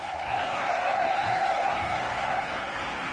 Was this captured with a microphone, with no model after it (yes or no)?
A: no